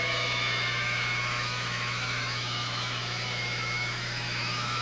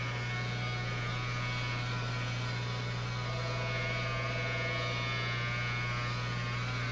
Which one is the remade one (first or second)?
first